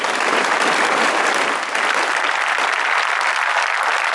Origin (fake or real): real